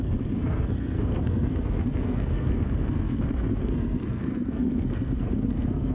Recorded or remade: remade